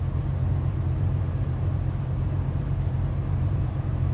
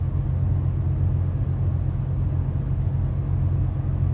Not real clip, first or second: first